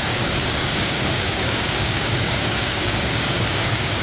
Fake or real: fake